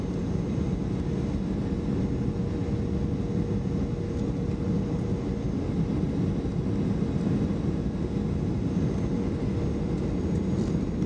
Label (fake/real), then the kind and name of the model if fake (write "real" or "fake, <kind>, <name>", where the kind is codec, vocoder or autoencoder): real